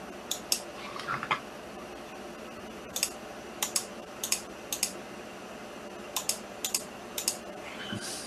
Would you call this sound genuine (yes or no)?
yes